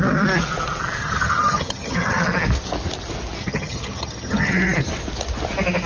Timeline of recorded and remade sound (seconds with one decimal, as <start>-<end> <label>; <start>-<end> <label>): 0.0-1.0 recorded; 1.0-2.2 remade; 2.2-3.4 recorded; 3.4-4.5 remade; 4.5-5.9 recorded